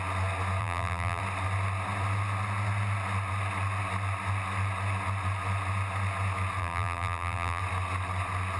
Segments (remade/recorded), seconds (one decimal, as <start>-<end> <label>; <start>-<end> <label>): 0.0-0.6 recorded; 0.6-1.2 remade; 1.2-6.6 recorded; 6.6-7.6 remade; 7.6-8.6 recorded